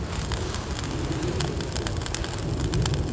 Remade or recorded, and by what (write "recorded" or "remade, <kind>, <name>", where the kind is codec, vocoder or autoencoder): recorded